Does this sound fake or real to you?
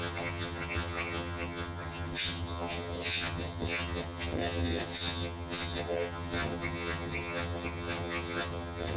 fake